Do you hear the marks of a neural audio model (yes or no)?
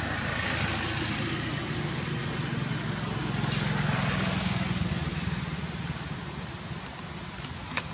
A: no